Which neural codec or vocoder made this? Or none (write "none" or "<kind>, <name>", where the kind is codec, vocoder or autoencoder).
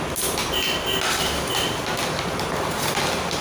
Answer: none